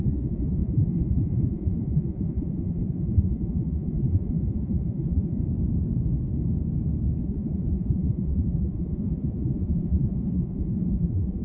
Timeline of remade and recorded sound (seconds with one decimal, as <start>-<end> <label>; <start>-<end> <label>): 0.0-5.4 remade; 5.4-7.2 recorded; 7.2-11.4 remade